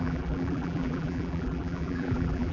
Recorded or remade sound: remade